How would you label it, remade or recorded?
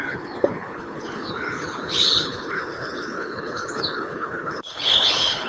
remade